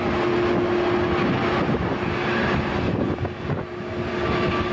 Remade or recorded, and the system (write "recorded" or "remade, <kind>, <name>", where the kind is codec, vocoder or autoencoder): recorded